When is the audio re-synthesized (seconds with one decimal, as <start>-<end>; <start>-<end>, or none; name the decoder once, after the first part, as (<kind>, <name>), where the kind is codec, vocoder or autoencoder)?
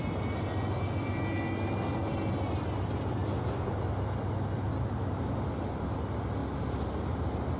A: none